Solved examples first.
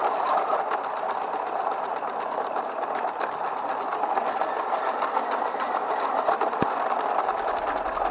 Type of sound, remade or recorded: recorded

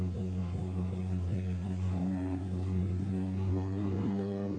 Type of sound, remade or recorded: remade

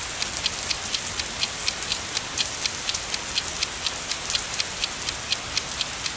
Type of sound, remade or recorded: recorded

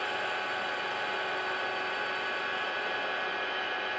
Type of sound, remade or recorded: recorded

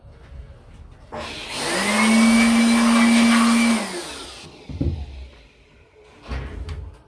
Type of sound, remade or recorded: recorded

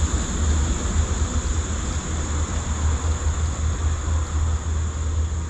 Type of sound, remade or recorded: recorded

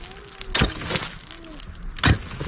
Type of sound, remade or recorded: recorded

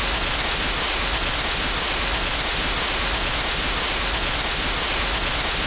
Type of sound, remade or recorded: recorded